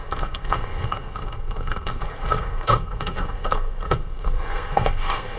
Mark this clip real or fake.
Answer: fake